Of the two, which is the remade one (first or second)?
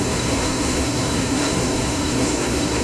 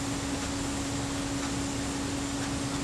first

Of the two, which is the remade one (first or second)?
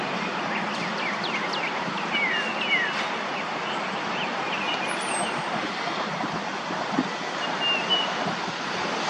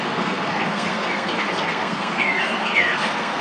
second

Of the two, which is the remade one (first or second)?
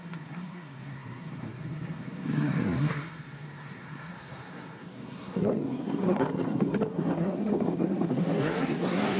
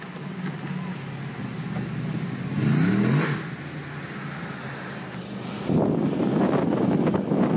first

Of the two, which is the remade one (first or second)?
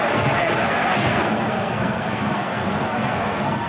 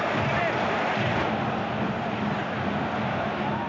first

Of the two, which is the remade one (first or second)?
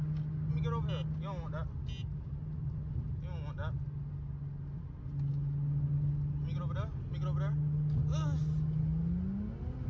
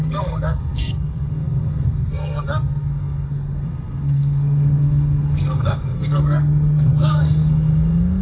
second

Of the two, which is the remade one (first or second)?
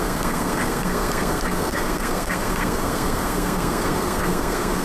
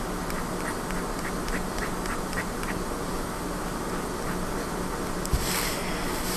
first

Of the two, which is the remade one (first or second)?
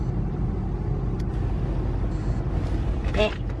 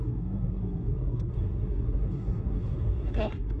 second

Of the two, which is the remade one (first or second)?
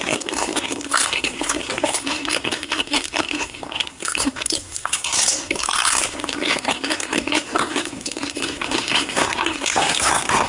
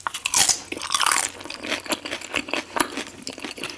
first